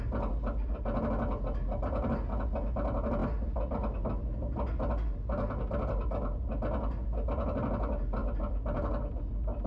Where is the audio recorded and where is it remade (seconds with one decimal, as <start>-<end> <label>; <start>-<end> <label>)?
0.0-9.7 recorded